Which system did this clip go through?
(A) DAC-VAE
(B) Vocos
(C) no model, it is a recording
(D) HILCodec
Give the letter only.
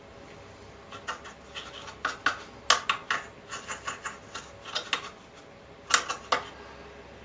C